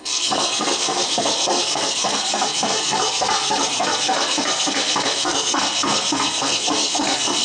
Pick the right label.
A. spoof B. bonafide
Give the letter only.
A